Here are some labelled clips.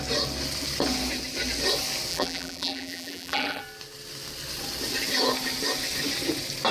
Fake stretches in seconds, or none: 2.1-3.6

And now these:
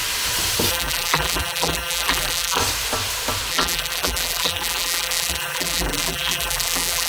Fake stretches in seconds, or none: 0.7-2.6; 3.5-7.1

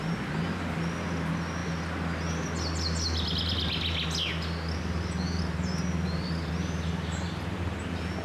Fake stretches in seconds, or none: none

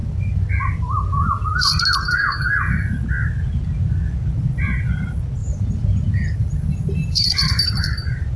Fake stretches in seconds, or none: 0.0-1.8; 5.4-8.4